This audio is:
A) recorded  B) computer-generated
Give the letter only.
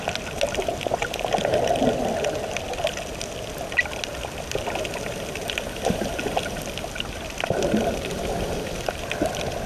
B